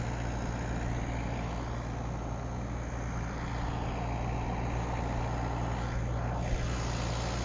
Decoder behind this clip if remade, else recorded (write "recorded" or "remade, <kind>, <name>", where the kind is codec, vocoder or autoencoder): recorded